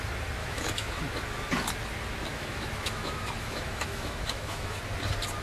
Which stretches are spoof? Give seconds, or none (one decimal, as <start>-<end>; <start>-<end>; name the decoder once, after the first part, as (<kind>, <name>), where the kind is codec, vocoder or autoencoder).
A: 0.4-1.0 (autoencoder, DAC-VAE); 2.3-4.8